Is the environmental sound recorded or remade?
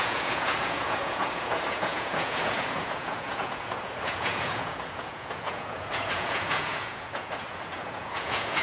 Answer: remade